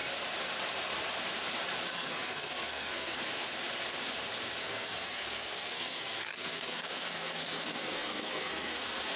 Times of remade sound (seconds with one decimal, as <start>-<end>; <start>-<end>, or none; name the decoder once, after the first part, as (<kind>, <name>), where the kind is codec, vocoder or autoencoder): 1.9-3.2 (codec, SNAC); 4.6-9.2